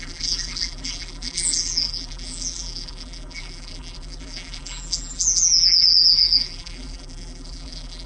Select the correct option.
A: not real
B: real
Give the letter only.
A